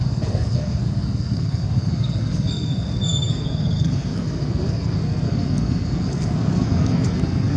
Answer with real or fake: fake